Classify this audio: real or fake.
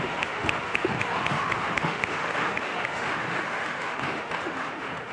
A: fake